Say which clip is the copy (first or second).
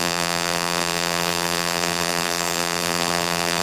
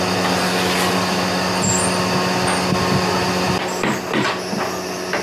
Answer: first